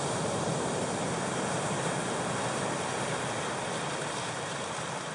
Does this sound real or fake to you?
real